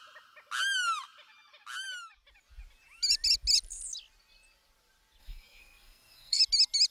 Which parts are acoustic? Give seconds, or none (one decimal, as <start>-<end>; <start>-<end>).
0.0-5.2; 6.4-6.9

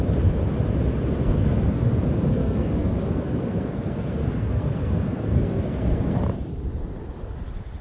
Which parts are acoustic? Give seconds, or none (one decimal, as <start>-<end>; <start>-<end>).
0.0-1.2; 1.9-2.3; 6.2-7.8